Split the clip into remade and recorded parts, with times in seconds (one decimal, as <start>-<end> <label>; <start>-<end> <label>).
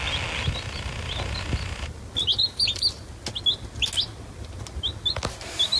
0.0-2.3 recorded; 2.3-3.1 remade; 3.1-5.8 recorded